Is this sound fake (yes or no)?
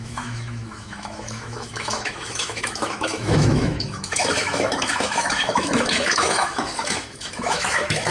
yes